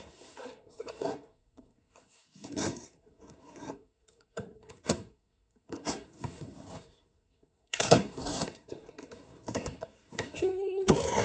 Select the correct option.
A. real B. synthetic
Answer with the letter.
B